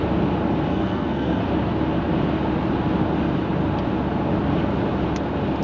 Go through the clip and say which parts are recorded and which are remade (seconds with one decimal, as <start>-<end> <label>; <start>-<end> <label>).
0.0-0.7 recorded; 0.7-1.4 remade; 1.4-5.6 recorded